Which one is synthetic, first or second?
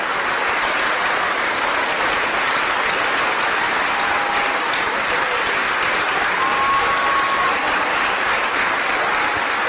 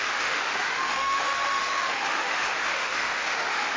second